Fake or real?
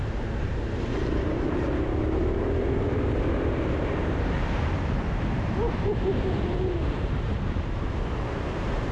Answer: fake